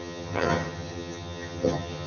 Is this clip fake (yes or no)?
yes